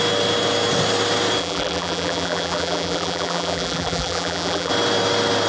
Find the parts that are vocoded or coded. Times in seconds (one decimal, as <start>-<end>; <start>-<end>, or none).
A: 1.4-4.7